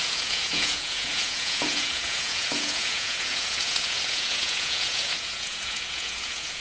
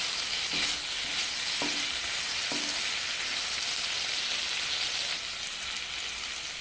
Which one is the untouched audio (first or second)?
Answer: second